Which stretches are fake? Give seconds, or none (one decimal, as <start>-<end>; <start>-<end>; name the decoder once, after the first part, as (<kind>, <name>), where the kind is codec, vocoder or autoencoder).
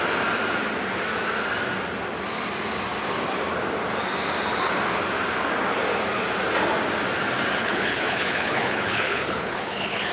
7.6-10.1 (codec, HILCodec)